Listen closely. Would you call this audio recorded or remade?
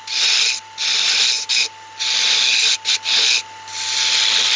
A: recorded